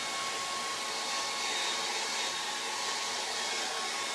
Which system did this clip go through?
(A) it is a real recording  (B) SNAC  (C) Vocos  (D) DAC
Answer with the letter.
A